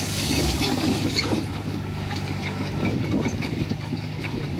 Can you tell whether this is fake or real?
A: fake